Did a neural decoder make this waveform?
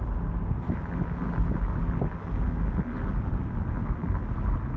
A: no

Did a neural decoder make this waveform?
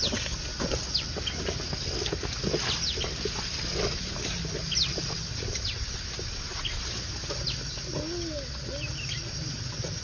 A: no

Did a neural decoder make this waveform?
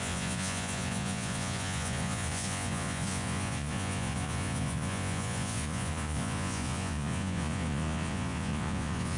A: yes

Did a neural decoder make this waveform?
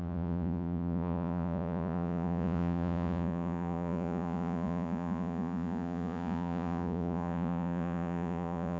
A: yes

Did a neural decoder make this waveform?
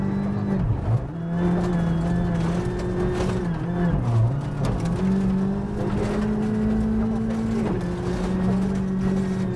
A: no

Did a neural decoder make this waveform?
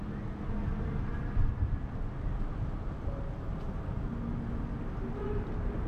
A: no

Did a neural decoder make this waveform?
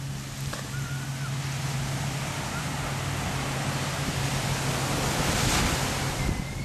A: no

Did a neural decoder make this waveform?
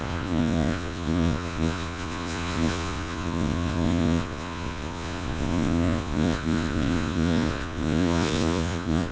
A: yes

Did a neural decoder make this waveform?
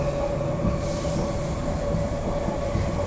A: no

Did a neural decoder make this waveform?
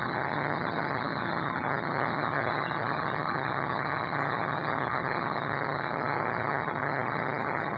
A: yes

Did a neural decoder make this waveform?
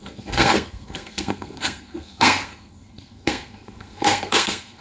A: yes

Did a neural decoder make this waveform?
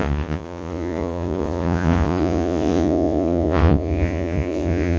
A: yes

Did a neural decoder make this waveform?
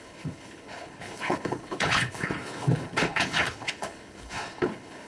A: yes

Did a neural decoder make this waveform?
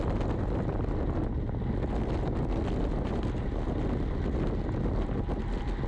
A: no